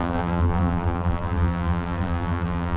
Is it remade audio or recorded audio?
remade